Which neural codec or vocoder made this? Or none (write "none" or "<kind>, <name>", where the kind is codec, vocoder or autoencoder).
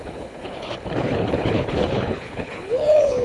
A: codec, HILCodec